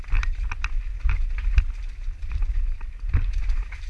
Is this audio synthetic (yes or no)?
no